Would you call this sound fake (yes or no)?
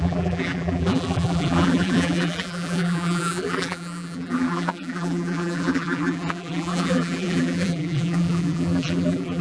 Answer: yes